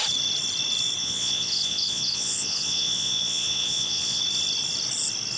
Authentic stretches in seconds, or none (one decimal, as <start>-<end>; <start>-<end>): 0.0-1.0; 4.2-5.4